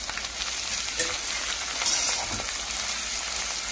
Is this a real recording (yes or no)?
yes